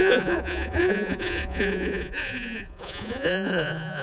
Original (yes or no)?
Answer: no